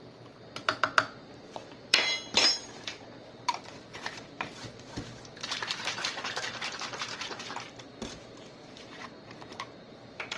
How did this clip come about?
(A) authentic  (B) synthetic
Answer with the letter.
B